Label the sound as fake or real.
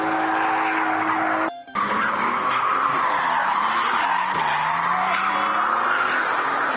real